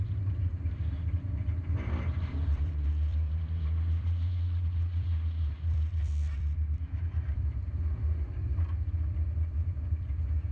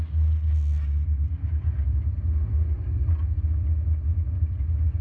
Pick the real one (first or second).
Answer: second